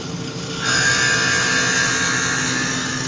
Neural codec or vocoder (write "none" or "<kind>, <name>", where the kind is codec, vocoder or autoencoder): none